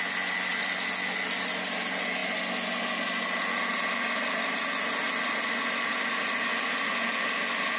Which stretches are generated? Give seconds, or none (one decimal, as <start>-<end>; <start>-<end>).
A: none